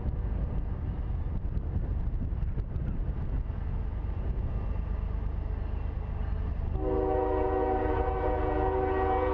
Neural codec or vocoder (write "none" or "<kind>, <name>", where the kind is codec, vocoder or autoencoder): none